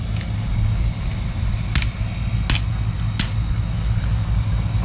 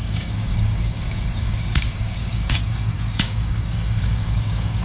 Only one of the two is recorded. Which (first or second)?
first